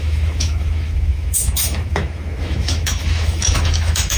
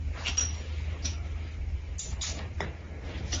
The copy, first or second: first